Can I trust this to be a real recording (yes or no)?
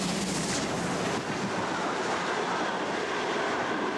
yes